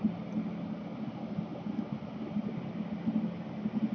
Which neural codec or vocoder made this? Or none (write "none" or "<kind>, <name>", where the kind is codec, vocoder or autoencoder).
none